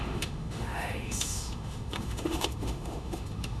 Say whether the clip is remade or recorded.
remade